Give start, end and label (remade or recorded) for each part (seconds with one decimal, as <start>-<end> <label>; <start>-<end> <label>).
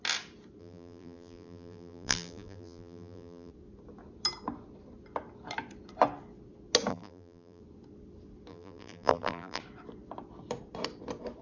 0.0-0.6 recorded; 0.6-3.5 remade; 3.5-6.9 recorded; 6.9-7.6 remade; 7.6-8.5 recorded; 8.5-9.6 remade; 9.6-11.4 recorded